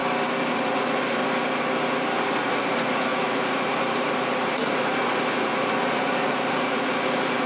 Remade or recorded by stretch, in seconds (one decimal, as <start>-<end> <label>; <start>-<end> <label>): 0.0-0.5 recorded; 0.5-1.2 remade; 1.2-2.2 recorded; 2.2-7.5 remade